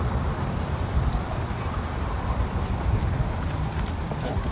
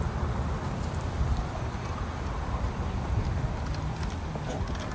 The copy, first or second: first